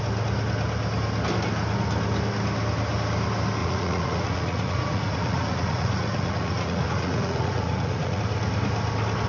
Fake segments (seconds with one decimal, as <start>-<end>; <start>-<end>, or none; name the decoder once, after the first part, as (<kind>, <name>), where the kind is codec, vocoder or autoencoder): 3.6-8.2 (vocoder, Vocos)